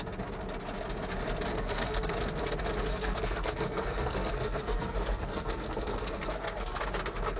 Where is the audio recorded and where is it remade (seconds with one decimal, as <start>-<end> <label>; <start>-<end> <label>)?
0.0-1.5 recorded; 1.5-2.1 remade; 2.1-2.9 recorded; 2.9-6.8 remade; 6.8-7.4 recorded